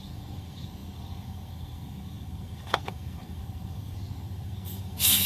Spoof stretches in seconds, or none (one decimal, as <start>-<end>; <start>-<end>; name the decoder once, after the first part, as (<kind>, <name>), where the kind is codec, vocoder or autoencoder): 0.0-5.3 (codec, SNAC)